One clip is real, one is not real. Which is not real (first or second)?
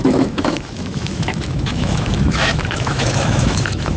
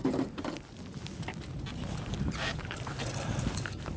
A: first